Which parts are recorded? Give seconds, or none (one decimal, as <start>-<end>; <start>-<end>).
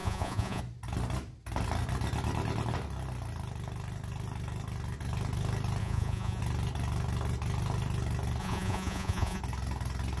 0.6-5.8; 6.4-8.4; 9.4-10.2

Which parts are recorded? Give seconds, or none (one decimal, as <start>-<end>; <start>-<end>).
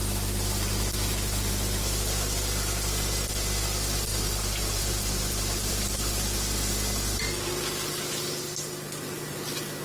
0.0-4.1; 5.7-9.8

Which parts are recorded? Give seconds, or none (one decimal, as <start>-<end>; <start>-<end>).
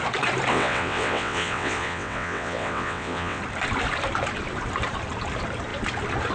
0.0-0.5; 3.4-6.3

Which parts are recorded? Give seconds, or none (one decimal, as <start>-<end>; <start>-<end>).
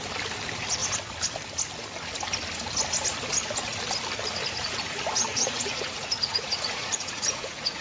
0.0-5.3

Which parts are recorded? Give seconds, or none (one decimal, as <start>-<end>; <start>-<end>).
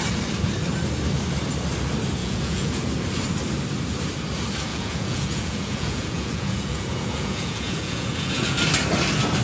0.0-2.2; 2.7-4.7; 8.6-9.4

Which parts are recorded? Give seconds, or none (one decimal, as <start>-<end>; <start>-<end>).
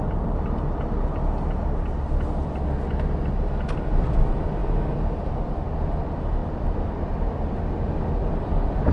0.0-4.6; 5.3-6.4